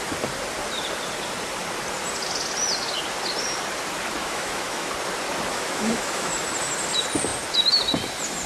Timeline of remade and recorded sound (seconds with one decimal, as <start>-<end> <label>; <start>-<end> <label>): 0.0-4.2 recorded; 4.2-4.9 remade; 4.9-5.5 recorded; 5.5-6.3 remade; 6.3-8.5 recorded